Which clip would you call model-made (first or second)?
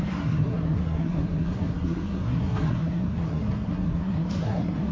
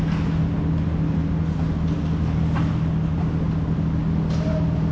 first